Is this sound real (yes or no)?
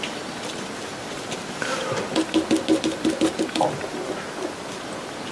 yes